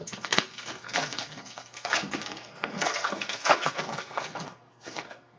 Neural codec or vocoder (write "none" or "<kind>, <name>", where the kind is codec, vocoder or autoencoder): codec, SNAC